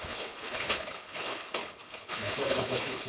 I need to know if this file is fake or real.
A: fake